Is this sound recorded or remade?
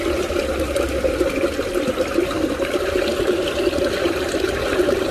recorded